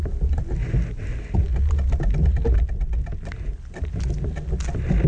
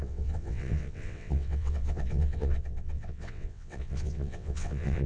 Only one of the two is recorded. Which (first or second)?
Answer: first